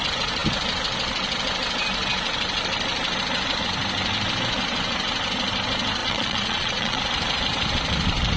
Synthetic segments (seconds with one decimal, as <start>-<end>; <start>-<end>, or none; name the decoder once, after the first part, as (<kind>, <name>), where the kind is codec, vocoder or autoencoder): 6.0-7.0 (vocoder, Vocos)

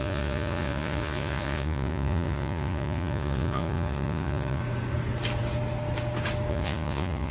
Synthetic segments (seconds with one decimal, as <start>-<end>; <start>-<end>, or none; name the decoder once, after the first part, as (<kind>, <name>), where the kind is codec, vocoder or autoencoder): 0.0-4.6 (vocoder, Vocos); 6.5-7.3

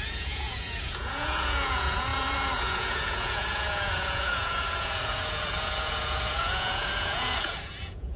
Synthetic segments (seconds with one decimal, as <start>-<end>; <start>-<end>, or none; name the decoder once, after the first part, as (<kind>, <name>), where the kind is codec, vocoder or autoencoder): 0.0-8.2 (vocoder, Vocos)

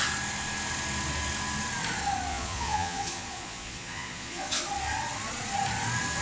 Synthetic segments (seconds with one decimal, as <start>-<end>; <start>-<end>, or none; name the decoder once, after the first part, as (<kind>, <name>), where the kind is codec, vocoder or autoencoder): 2.3-4.6 (vocoder, Vocos)

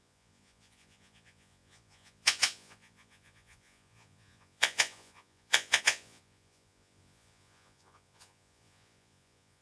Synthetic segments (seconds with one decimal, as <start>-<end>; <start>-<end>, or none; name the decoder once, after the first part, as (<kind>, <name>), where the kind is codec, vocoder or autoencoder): 0.0-9.6 (vocoder, Vocos)

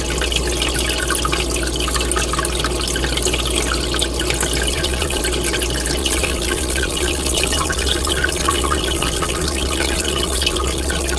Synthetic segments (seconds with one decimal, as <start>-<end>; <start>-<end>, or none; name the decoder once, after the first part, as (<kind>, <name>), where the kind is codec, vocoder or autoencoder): 4.7-5.2 (vocoder, Vocos); 6.0-11.2

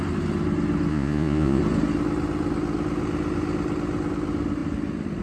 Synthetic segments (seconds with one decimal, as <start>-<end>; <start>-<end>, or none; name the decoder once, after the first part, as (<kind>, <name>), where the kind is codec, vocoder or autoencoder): 0.9-1.6 (vocoder, Vocos)